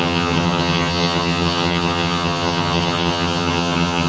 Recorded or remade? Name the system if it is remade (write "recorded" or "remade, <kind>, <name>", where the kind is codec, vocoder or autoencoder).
remade, vocoder, HiFi-GAN